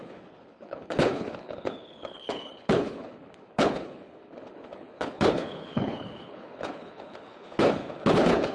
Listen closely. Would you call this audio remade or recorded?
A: remade